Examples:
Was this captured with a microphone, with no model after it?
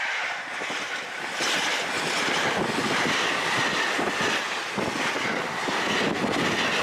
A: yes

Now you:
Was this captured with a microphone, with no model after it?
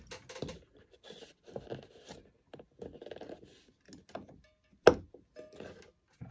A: yes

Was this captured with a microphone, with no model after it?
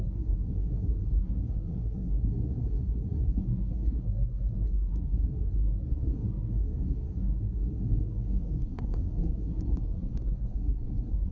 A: no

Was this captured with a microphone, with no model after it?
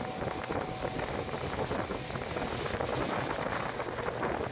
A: yes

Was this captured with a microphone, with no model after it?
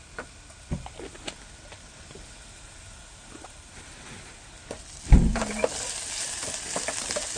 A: yes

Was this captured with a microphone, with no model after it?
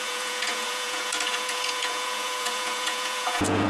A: no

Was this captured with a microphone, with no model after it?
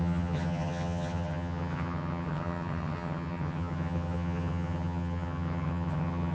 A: no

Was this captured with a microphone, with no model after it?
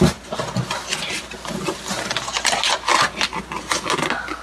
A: yes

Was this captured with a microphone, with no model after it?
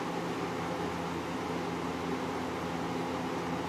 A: yes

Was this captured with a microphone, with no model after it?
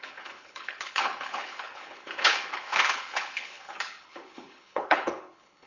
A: no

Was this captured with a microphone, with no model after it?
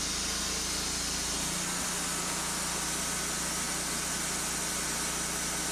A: yes